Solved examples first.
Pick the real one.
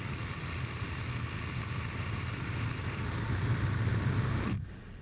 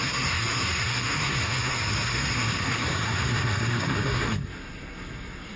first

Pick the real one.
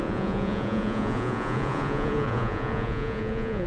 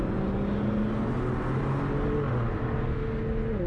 second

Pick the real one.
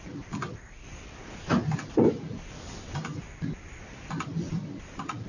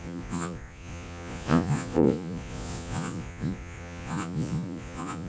first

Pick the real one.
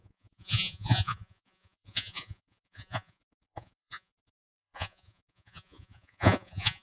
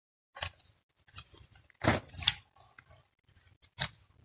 second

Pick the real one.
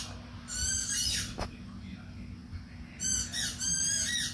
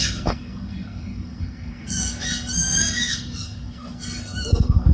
first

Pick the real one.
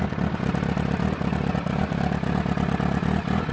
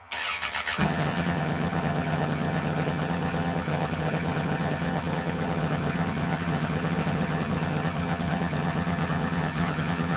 first